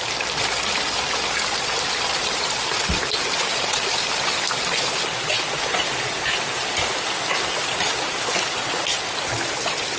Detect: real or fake real